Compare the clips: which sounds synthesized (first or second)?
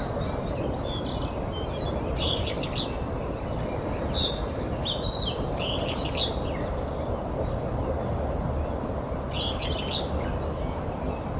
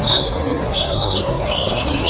second